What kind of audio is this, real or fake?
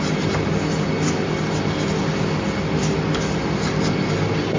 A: real